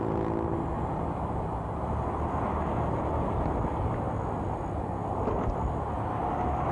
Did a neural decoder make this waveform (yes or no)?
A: no